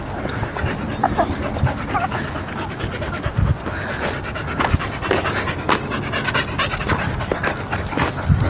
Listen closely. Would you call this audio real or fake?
real